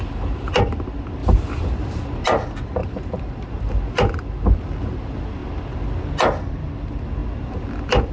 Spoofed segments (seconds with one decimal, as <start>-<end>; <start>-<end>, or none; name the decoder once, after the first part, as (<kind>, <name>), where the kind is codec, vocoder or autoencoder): 1.2-2.0 (vocoder, BigVGAN v2); 2.8-3.8